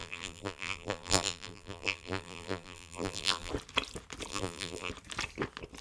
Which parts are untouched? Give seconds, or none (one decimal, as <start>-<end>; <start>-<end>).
3.5-4.3; 4.9-5.8

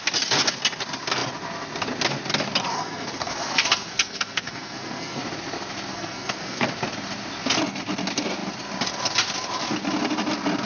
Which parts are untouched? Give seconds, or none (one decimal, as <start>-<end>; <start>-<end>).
0.0-2.7; 5.2-5.9; 6.7-10.7

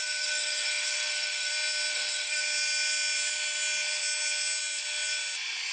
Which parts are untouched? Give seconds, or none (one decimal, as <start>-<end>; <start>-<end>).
1.5-1.9; 2.4-5.7